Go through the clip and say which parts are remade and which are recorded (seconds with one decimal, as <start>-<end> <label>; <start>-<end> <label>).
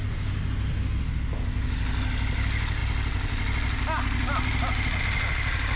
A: 0.0-5.8 recorded